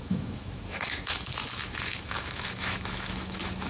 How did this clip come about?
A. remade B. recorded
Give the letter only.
A